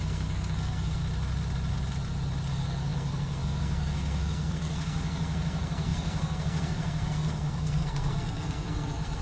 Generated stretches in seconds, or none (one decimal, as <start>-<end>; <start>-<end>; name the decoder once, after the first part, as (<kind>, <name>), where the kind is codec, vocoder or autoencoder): 0.0-1.0 (codec, SNAC); 2.5-9.2